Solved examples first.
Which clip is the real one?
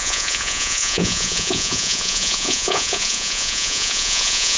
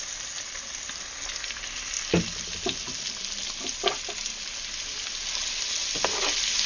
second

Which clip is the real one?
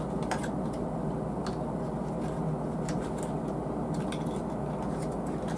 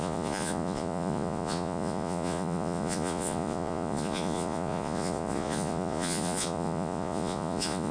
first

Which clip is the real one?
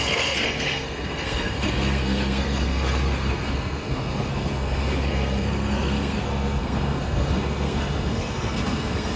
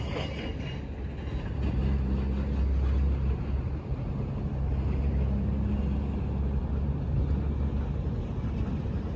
second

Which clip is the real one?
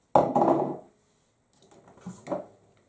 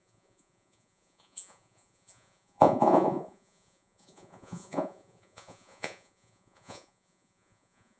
first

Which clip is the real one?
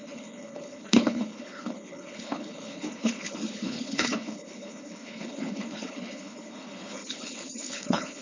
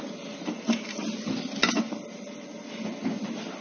second